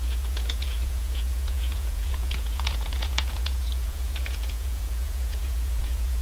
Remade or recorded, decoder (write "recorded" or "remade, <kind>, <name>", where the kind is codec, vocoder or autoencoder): remade, vocoder, Vocos